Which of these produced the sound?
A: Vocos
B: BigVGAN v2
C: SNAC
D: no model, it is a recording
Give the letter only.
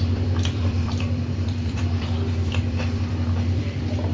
B